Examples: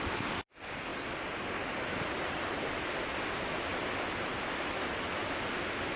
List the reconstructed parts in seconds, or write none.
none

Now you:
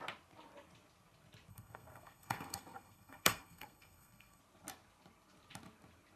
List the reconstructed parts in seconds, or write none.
1.5-4.4 (codec, SNAC)

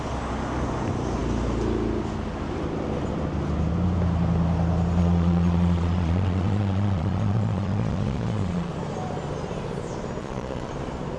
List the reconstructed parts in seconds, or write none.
5.0-8.7 (vocoder, Vocos); 10.2-10.7

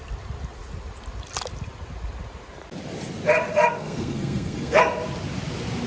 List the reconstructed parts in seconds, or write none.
3.7-4.8 (codec, SNAC)

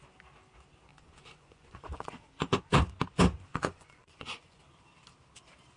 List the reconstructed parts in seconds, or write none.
0.9-2.6 (vocoder, Vocos); 3.5-4.6

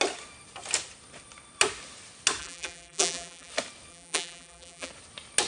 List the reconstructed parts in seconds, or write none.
2.4-3.5 (vocoder, BigVGAN v2); 3.9-4.9

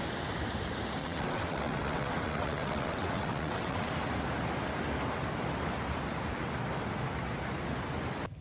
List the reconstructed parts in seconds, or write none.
1.0-3.9 (vocoder, WaveNeXt)